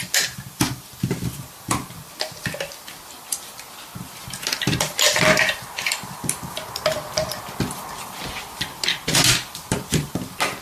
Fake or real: real